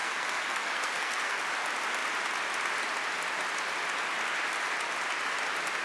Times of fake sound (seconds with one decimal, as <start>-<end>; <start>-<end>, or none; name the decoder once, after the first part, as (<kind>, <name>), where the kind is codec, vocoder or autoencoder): 0.0-1.4 (codec, SNAC)